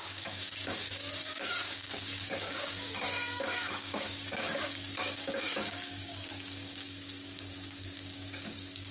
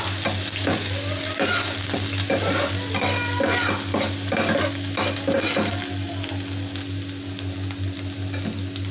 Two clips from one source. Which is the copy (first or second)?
first